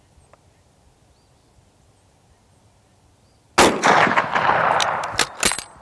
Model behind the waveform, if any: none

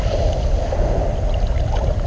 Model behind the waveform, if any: none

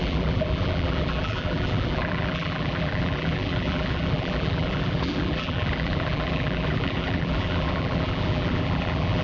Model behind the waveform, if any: vocoder, BigVGAN v2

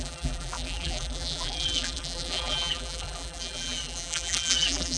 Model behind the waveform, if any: vocoder, BigVGAN v2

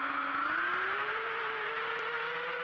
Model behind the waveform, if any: none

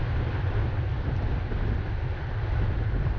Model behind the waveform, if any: vocoder, BigVGAN v2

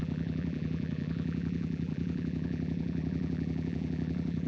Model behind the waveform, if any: vocoder, BigVGAN v2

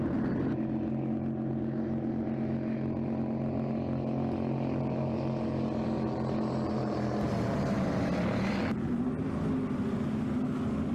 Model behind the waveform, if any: none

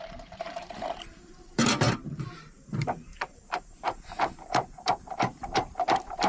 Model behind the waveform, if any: vocoder, BigVGAN v2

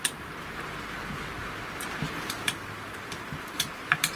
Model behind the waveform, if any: vocoder, BigVGAN v2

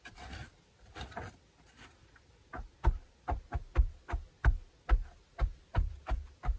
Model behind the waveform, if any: none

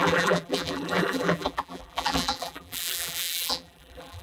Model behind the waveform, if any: vocoder, BigVGAN v2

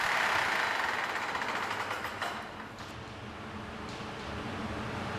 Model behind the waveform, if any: none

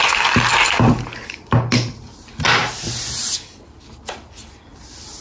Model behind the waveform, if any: none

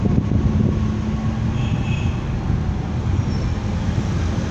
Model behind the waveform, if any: none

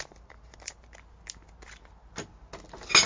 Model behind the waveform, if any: none